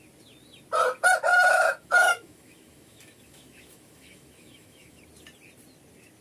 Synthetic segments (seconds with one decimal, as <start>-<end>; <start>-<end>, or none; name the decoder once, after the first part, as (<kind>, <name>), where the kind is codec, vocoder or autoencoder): 1.3-5.0 (autoencoder, DAC-VAE)